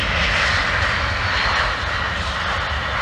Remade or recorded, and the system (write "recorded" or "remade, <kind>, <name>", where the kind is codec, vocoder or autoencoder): recorded